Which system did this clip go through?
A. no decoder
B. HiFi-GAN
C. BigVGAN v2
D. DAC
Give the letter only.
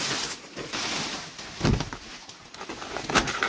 A